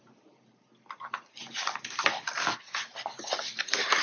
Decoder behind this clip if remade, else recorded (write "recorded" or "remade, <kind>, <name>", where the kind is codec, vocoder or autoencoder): remade, vocoder, BigVGAN v2